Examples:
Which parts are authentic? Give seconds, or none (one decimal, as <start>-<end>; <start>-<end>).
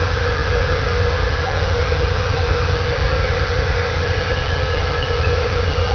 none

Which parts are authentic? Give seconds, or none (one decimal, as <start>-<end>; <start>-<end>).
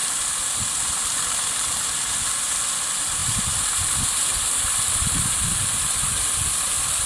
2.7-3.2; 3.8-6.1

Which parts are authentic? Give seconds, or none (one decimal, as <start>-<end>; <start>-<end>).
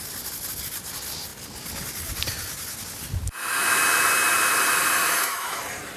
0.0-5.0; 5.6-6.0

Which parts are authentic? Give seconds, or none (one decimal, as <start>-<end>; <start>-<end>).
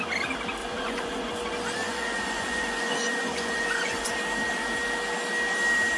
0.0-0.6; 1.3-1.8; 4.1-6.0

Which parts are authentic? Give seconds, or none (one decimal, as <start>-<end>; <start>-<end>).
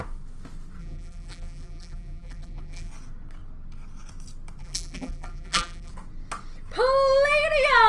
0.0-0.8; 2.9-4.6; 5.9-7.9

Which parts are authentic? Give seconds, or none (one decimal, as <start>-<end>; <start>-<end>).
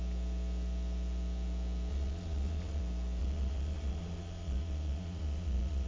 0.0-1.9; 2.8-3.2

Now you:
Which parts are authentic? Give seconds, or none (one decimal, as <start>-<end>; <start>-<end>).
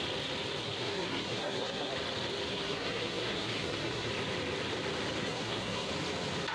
0.0-0.6; 1.9-2.5; 4.1-5.2; 5.9-6.5